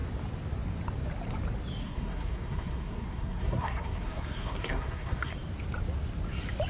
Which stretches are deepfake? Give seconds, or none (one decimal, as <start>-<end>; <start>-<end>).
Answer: 1.8-5.3